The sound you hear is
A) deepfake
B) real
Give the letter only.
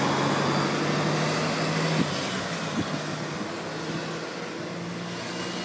B